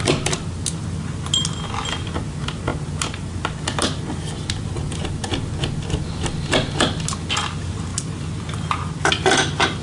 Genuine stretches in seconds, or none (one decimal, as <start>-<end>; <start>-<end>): 0.0-9.8

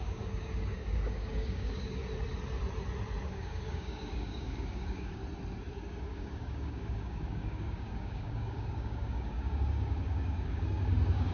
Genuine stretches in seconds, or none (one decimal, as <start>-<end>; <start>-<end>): 2.0-3.2; 5.2-5.7